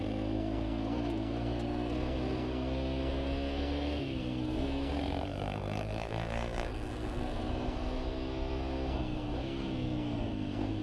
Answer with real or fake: fake